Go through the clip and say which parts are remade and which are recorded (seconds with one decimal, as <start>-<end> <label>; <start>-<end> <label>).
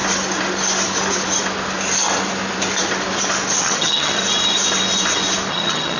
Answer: 0.0-3.6 recorded; 3.6-4.2 remade; 4.2-5.5 recorded; 5.5-6.0 remade